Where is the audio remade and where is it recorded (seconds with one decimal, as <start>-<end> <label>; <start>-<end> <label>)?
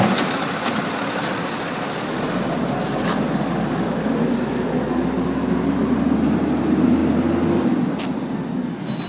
0.0-9.1 recorded